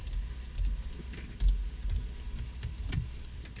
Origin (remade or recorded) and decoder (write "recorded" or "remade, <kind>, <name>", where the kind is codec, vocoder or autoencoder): recorded